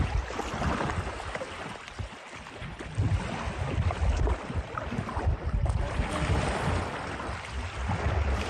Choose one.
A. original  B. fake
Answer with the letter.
A